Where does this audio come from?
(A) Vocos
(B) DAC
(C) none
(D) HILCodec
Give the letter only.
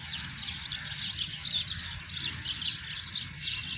C